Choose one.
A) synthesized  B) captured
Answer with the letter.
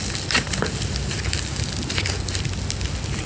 B